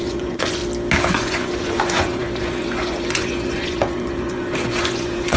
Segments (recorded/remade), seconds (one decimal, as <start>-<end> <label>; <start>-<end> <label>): 0.0-0.6 remade; 0.6-1.1 recorded; 1.1-5.4 remade